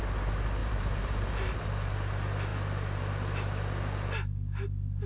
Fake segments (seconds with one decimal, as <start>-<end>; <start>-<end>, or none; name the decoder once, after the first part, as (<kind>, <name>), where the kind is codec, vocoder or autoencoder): 0.6-1.5 (vocoder, BigVGAN v2)